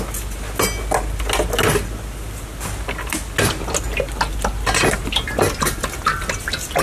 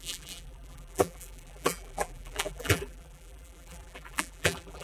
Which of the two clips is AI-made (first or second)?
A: second